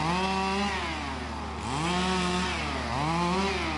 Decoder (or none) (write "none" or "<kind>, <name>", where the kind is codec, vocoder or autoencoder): none